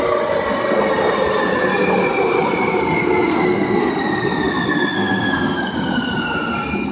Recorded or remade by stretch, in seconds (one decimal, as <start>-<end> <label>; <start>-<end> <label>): 0.0-3.3 recorded; 3.3-3.9 remade; 3.9-4.9 recorded; 4.9-5.6 remade; 5.6-6.9 recorded